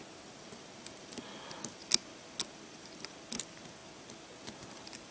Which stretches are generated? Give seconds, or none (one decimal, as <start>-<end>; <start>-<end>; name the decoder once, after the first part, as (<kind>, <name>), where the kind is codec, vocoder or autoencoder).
none